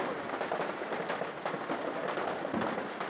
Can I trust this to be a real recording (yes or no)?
yes